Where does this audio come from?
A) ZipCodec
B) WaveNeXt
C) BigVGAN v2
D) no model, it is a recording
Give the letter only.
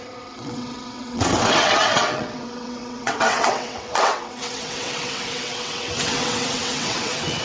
B